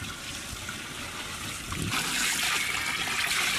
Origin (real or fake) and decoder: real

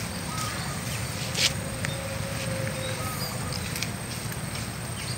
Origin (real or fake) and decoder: real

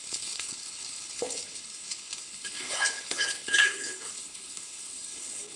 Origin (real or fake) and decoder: fake, codec, HILCodec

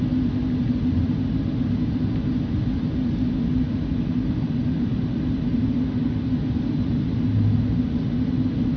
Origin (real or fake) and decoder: real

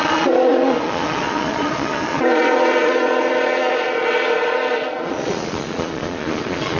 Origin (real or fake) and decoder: fake, vocoder, Vocos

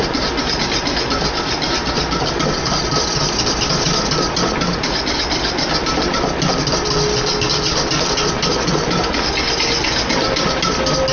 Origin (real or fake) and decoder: real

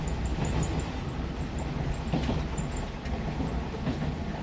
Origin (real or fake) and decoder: real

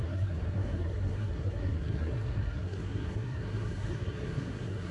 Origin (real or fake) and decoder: fake, codec, SNAC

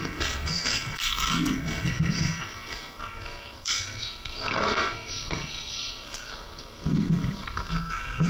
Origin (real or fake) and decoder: fake, codec, SNAC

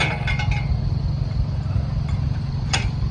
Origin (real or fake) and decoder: fake, vocoder, BigVGAN v2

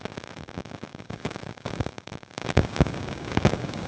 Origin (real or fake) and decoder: fake, codec, DAC